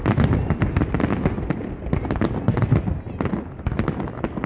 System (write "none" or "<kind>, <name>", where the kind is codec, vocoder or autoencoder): none